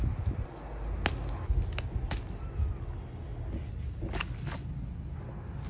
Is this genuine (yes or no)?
yes